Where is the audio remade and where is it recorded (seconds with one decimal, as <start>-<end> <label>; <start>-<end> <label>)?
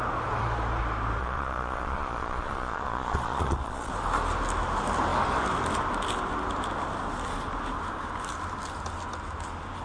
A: 0.0-1.2 recorded; 1.2-3.9 remade; 3.9-9.8 recorded